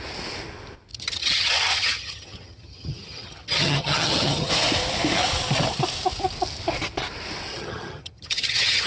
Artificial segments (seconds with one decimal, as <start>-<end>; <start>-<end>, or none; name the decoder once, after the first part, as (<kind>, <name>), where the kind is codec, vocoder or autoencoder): 0.9-4.5 (vocoder, HiFi-GAN); 7.5-8.9